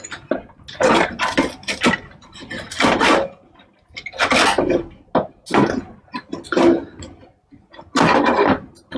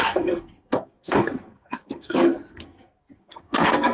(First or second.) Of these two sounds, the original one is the first